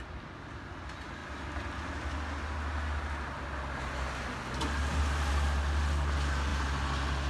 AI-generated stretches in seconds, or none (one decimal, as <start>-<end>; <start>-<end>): none